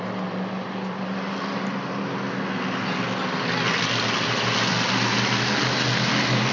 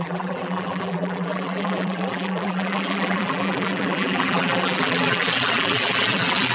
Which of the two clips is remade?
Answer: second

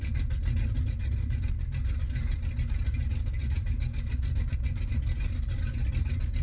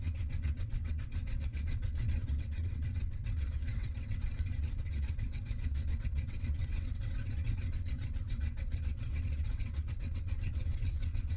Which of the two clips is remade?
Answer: second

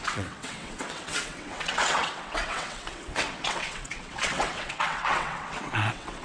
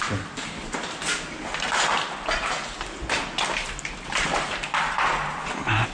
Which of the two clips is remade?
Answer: first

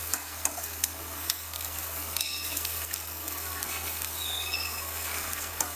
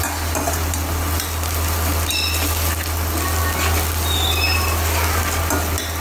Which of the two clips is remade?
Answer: first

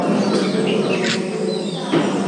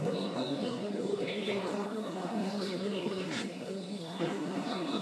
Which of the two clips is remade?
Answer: second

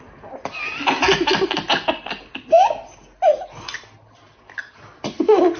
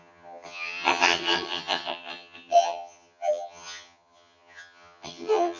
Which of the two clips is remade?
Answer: second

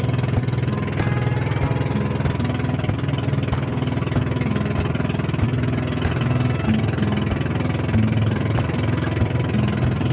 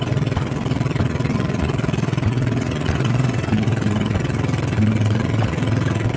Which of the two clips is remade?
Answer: second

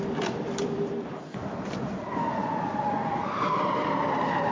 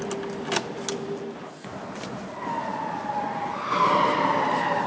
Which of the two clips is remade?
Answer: first